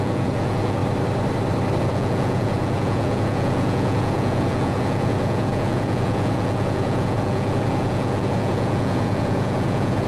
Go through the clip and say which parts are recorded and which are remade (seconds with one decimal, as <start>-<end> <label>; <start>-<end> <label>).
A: 0.0-0.8 remade; 0.8-1.8 recorded; 1.8-10.1 remade